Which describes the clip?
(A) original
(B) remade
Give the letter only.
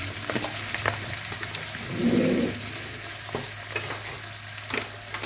A